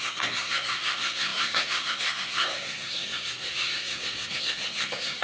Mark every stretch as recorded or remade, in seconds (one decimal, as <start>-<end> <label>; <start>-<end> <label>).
0.0-5.2 remade